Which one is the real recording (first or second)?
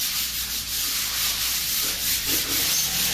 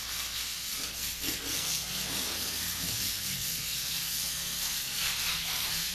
first